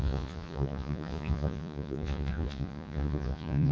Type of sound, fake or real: fake